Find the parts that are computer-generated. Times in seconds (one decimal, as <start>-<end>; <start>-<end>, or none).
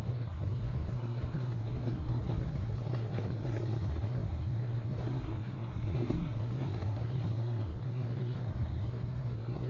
0.0-9.7